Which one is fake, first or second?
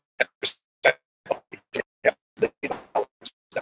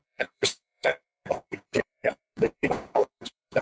second